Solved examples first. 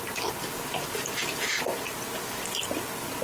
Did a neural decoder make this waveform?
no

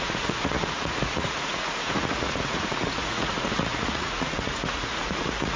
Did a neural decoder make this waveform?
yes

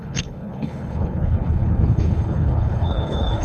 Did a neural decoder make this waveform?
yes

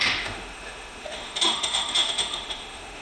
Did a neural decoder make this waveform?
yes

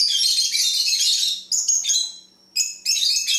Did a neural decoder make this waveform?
no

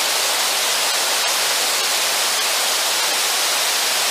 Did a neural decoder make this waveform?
no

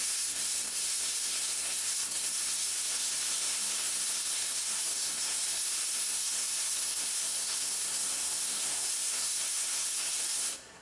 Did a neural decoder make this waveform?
yes